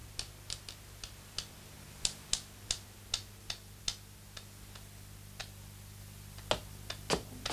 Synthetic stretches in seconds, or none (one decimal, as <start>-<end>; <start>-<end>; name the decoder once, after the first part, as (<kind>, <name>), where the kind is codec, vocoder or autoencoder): none